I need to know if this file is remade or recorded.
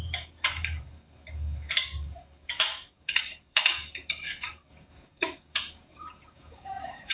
remade